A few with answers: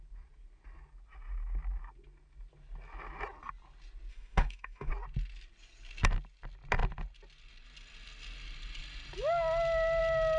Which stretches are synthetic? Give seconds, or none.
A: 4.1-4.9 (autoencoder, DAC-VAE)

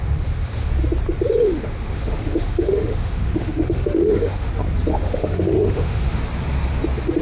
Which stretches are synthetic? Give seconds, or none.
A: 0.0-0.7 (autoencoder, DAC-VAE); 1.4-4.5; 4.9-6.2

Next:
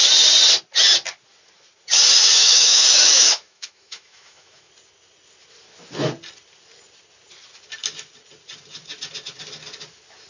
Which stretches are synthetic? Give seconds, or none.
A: 2.2-4.7 (autoencoder, DAC-VAE)